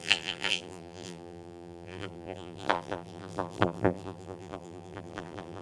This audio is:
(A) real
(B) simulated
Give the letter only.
B